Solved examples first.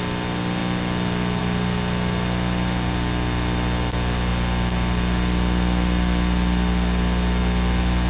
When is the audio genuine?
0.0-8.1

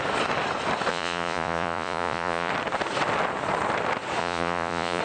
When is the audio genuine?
0.0-0.9; 2.5-4.2

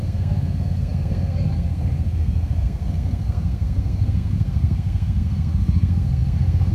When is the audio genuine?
none

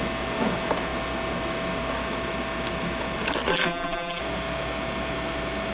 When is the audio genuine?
0.0-3.5; 4.2-5.7